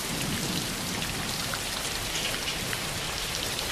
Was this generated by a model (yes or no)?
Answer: no